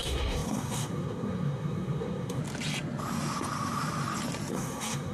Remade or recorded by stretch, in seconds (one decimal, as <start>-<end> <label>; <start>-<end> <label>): 0.0-2.4 remade; 2.4-4.5 recorded; 4.5-5.1 remade